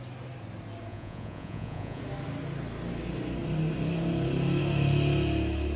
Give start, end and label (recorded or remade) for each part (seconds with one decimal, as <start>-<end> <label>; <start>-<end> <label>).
0.0-0.9 recorded; 0.9-2.0 remade; 2.0-5.8 recorded

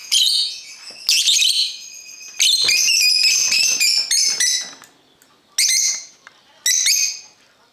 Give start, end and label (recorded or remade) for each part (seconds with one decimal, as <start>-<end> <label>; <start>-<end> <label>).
0.0-0.7 remade; 0.7-7.7 recorded

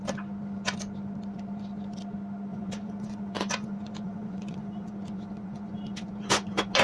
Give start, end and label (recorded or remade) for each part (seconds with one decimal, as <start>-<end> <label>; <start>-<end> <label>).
0.0-2.5 recorded; 2.5-6.8 remade

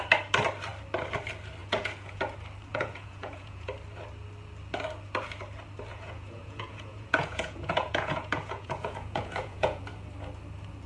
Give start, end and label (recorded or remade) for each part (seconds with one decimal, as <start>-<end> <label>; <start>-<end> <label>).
0.0-1.6 recorded; 1.6-2.2 remade; 2.2-2.7 recorded; 2.7-3.7 remade; 3.7-5.9 recorded; 5.9-9.8 remade; 9.8-10.9 recorded

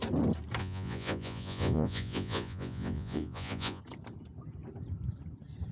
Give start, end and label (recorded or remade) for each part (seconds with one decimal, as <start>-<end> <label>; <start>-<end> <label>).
0.0-0.6 recorded; 0.6-3.8 remade; 3.8-5.7 recorded

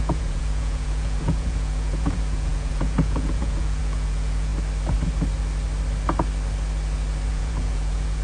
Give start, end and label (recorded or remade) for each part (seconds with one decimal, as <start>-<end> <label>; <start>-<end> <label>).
0.0-4.5 remade; 4.5-7.3 recorded; 7.3-8.2 remade

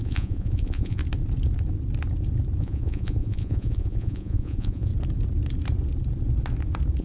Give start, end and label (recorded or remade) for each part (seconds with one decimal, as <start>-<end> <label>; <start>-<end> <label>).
0.0-1.0 remade; 1.0-2.6 recorded; 2.6-4.9 remade; 4.9-7.0 recorded

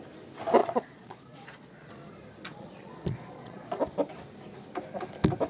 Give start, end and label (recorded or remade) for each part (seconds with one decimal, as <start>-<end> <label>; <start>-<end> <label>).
0.0-0.6 recorded; 0.6-1.9 remade; 1.9-2.5 recorded; 2.5-3.8 remade; 3.8-5.5 recorded